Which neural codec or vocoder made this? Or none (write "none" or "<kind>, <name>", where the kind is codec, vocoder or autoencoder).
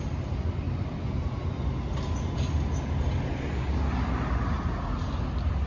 none